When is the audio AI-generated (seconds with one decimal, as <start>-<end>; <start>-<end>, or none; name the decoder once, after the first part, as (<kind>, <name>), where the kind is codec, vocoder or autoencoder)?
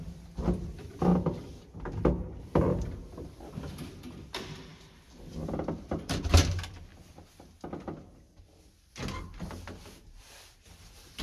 0.0-1.1 (vocoder, BigVGAN v2); 2.4-6.9; 10.2-11.2